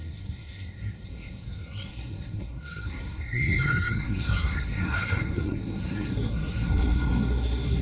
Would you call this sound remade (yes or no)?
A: yes